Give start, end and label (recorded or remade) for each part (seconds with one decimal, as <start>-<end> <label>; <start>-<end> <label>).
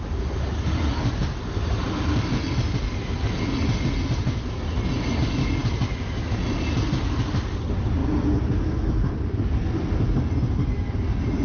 0.0-11.4 recorded